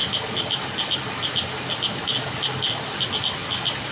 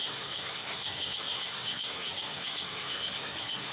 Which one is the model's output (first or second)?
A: second